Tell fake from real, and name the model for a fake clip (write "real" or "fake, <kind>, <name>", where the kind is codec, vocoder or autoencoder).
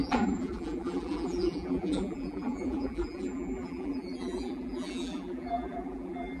fake, vocoder, BigVGAN v2